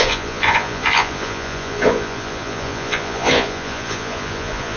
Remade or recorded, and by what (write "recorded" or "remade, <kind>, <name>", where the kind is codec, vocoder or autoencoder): remade, vocoder, Vocos